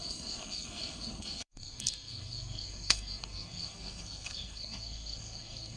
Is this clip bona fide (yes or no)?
no